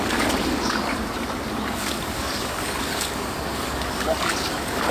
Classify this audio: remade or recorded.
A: remade